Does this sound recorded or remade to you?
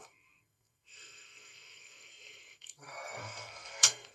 remade